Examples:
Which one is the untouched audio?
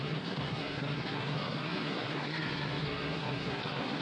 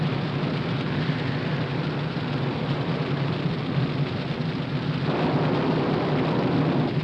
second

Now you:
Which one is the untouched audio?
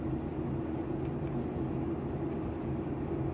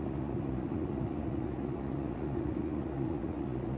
first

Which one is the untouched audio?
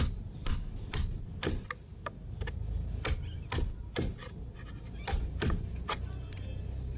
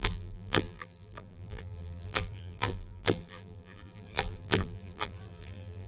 first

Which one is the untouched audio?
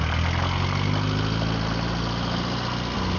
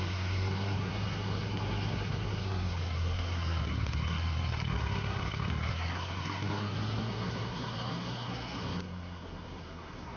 first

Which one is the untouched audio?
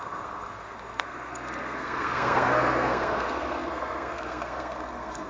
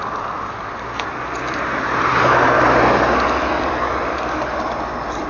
second